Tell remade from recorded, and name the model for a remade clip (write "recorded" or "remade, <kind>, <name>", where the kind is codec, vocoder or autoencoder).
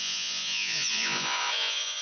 remade, vocoder, Vocos